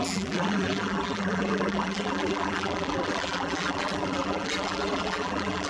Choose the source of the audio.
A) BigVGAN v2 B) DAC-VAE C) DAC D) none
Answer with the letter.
A